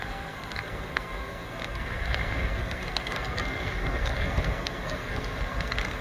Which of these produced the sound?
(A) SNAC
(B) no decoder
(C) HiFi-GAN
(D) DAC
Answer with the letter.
A